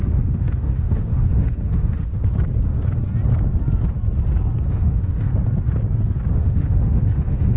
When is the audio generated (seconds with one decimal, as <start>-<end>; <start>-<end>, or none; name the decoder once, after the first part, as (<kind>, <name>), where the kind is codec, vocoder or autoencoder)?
0.0-2.1 (autoencoder, DAC-VAE); 4.7-5.3; 6.3-7.6